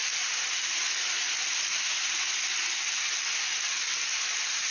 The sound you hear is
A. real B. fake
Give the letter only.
A